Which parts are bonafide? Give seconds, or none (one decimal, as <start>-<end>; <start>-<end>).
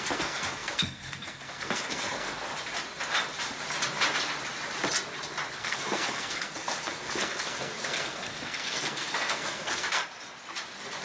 2.5-5.6; 10.0-11.0